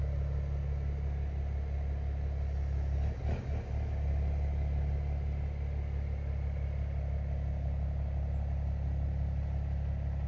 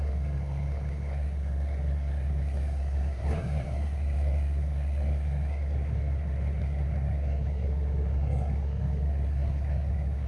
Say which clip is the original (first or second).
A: first